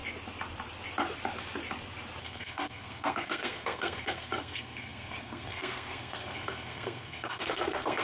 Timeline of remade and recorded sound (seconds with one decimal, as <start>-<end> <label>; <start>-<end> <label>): 0.0-2.2 recorded; 2.2-8.0 remade

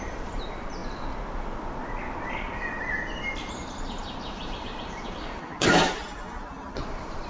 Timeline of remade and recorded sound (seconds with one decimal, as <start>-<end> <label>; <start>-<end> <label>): 0.0-0.8 remade; 0.8-3.5 recorded; 3.5-7.3 remade